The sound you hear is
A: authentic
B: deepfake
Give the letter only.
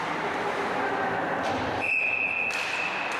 A